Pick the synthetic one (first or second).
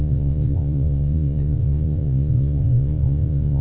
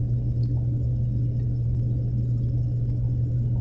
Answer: first